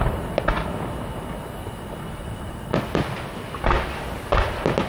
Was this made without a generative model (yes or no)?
yes